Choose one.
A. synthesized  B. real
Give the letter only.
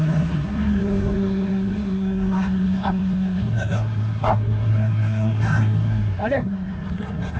A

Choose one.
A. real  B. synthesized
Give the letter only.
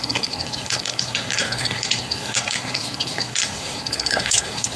B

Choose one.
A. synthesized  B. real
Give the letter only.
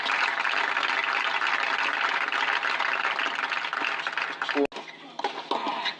B